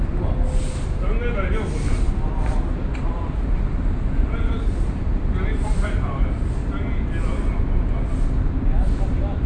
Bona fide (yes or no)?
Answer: yes